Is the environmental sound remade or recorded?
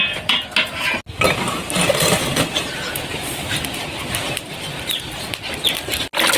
recorded